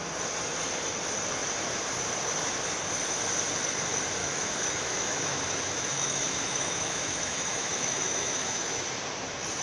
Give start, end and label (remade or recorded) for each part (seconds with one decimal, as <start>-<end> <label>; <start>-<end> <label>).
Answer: 0.0-4.2 recorded; 4.2-8.8 remade; 8.8-9.6 recorded